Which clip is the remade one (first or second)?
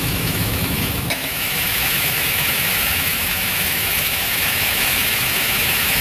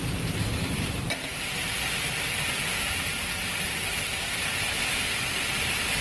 first